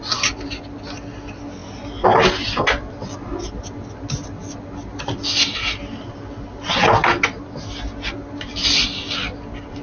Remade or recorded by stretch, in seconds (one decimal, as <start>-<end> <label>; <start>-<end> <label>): 0.0-9.8 recorded